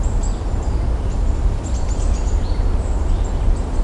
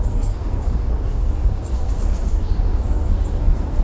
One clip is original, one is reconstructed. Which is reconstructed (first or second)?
second